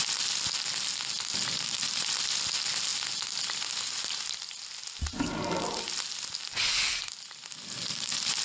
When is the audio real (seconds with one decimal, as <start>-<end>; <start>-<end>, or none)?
0.0-8.4